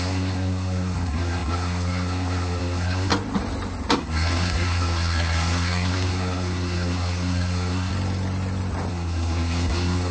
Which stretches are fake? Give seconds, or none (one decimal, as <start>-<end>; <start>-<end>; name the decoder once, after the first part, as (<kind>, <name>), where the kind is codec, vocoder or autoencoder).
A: 0.0-3.1 (codec, SNAC); 3.9-7.9; 8.9-10.1